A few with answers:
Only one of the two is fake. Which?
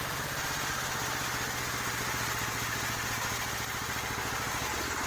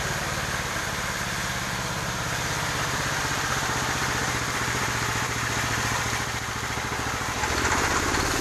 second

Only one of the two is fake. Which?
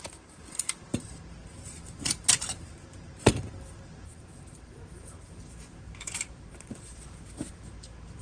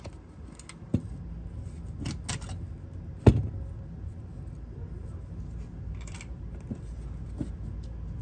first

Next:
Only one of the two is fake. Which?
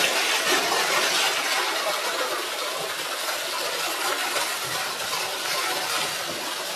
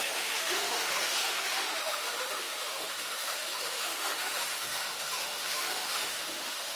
second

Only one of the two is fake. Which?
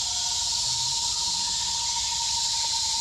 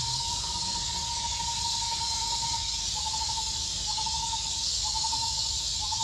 second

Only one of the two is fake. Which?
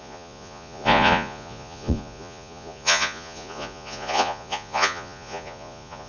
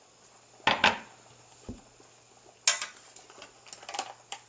first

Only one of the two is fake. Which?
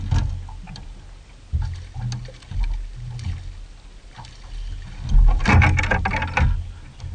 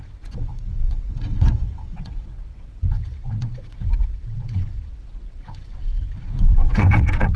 second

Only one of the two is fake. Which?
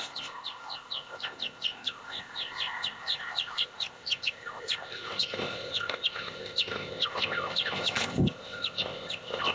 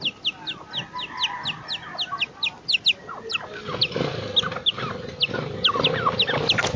first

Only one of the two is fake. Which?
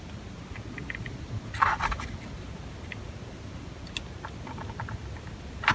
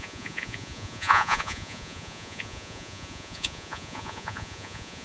second